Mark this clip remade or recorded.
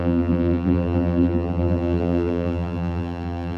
remade